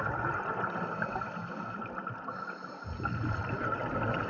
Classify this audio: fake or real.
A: real